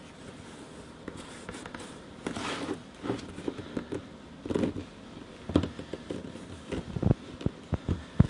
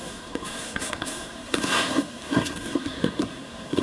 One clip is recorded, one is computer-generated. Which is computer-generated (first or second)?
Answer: second